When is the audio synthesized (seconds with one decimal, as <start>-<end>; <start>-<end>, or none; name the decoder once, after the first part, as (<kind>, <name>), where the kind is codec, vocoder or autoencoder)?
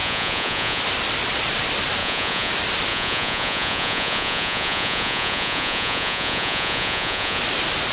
0.0-0.8 (vocoder, Vocos); 2.0-2.5; 2.9-7.4